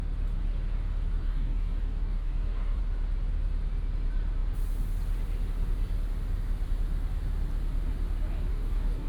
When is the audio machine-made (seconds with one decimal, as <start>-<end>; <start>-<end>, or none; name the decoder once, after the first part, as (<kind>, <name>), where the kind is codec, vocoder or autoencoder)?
1.2-2.8 (codec, DAC); 8.5-9.1